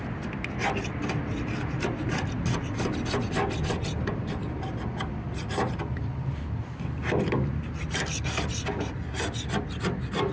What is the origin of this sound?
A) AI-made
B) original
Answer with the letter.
B